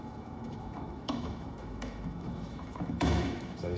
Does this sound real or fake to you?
fake